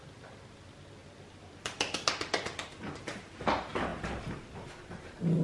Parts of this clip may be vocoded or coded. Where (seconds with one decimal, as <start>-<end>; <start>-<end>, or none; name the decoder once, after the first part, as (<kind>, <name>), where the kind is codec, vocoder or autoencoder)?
none